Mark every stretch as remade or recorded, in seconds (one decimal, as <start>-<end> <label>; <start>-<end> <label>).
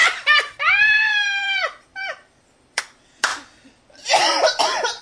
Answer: 0.0-2.8 remade; 2.8-3.3 recorded; 3.3-5.0 remade